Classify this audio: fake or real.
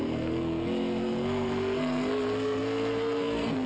fake